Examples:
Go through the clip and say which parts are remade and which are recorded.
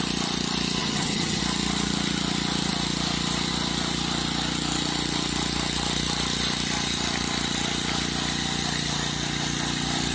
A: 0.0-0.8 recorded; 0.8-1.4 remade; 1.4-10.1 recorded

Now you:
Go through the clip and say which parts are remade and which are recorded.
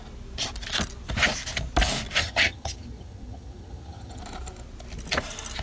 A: 0.0-2.2 recorded; 2.2-4.2 remade; 4.2-5.6 recorded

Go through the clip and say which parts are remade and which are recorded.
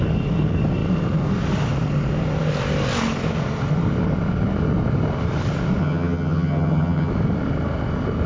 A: 0.0-5.8 recorded; 5.8-7.1 remade; 7.1-8.3 recorded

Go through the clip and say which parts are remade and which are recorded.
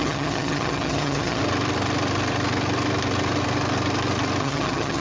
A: 0.0-1.4 remade; 1.4-4.4 recorded; 4.4-5.0 remade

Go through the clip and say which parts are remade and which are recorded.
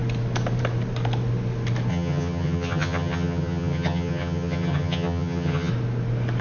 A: 0.0-1.9 recorded; 1.9-5.7 remade; 5.7-6.4 recorded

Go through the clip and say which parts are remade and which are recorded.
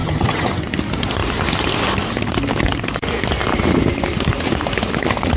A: 0.0-0.6 remade; 0.6-5.4 recorded